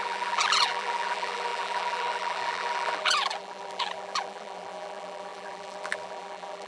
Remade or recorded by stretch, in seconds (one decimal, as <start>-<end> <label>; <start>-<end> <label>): 0.0-6.7 remade